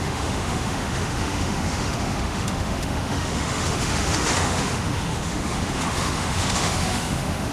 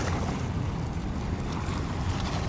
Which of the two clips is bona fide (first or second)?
second